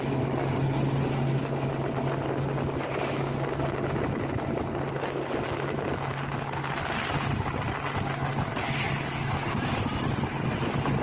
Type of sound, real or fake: real